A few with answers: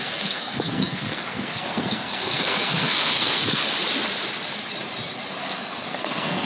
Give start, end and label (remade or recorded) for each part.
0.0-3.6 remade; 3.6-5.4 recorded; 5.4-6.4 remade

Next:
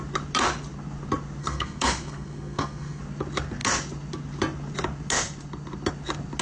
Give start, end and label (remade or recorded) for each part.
0.0-1.4 recorded; 1.4-3.0 remade; 3.0-6.4 recorded

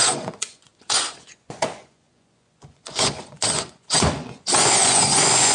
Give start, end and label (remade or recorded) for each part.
0.0-5.5 remade